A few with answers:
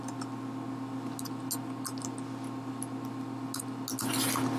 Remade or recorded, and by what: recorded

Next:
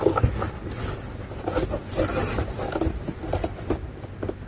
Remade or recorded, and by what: recorded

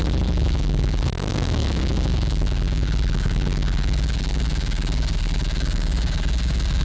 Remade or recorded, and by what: remade, codec, DAC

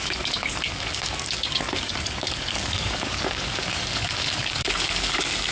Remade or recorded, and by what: remade, codec, DAC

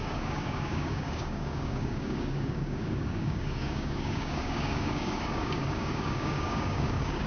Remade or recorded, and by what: remade, codec, DAC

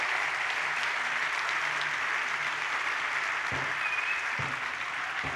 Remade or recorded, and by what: recorded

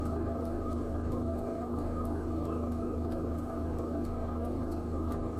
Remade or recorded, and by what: remade, codec, DAC